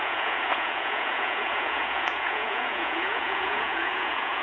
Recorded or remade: remade